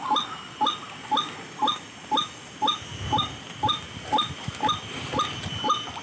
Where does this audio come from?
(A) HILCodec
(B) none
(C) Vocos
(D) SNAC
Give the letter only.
B